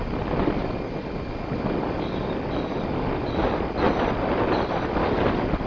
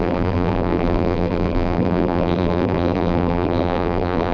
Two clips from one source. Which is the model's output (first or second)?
second